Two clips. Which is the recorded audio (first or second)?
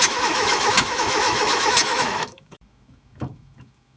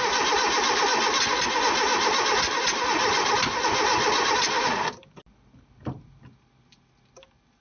second